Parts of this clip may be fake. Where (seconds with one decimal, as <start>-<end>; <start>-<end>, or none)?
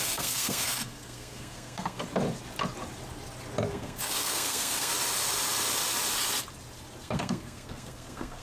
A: 0.0-2.0; 3.7-4.9; 7.0-8.4